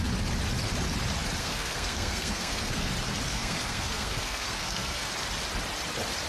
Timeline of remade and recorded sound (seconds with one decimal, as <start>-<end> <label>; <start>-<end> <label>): 0.0-1.4 recorded; 1.4-2.9 remade; 2.9-3.3 recorded; 3.3-5.1 remade; 5.1-6.3 recorded